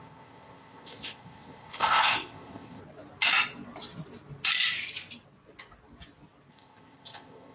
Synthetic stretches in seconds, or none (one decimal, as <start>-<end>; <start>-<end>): 0.0-2.8; 6.5-7.5